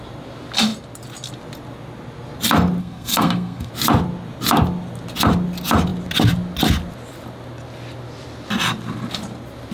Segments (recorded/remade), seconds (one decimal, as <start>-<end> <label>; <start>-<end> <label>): 0.0-2.8 recorded; 2.8-3.7 remade; 3.7-9.7 recorded